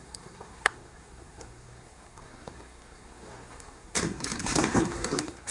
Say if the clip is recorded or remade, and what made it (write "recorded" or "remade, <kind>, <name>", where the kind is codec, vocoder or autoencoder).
remade, codec, SNAC